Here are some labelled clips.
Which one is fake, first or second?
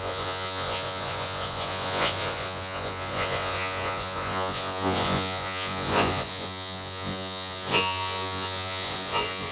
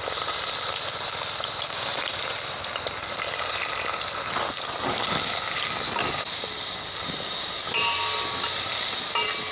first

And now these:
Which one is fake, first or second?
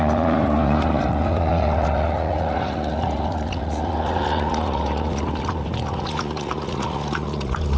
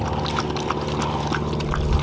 first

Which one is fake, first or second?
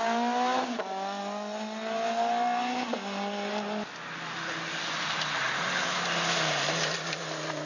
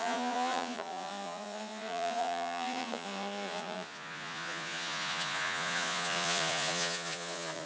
second